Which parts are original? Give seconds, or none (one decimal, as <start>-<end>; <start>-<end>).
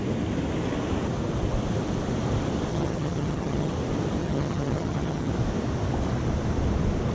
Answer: 0.0-2.7; 3.7-4.2; 5.3-7.1